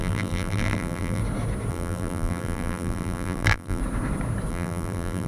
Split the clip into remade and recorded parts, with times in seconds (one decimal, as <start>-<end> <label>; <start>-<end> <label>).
0.0-1.2 remade; 1.2-1.7 recorded; 1.7-3.8 remade; 3.8-4.5 recorded; 4.5-5.3 remade